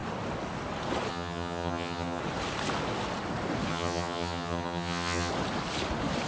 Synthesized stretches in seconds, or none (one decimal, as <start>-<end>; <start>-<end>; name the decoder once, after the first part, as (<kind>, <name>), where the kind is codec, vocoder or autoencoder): 1.1-2.2 (vocoder, HiFi-GAN); 3.7-5.3